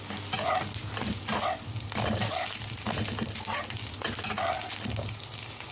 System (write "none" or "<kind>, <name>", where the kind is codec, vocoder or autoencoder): none